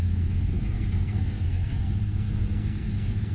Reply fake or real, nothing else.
fake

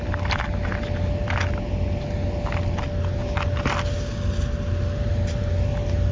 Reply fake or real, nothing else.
real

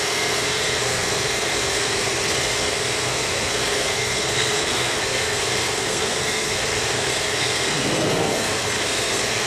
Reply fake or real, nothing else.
fake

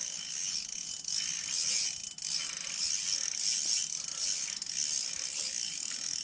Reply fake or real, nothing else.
real